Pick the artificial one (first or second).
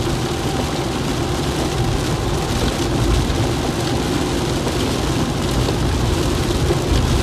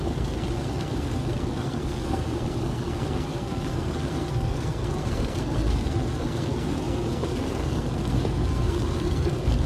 second